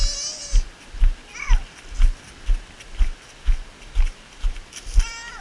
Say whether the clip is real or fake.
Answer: real